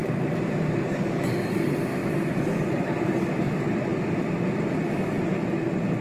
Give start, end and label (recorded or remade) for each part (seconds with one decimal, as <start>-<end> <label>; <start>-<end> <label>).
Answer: 0.0-1.2 remade; 1.2-2.0 recorded; 2.0-3.4 remade; 3.4-6.0 recorded